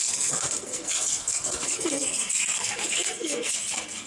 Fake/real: fake